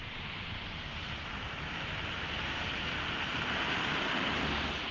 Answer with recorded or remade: remade